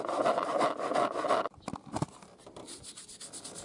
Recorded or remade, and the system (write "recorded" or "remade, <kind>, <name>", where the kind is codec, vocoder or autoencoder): recorded